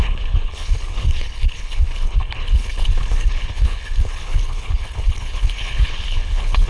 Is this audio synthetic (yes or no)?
yes